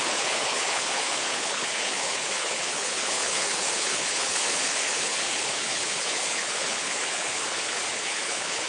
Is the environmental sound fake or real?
fake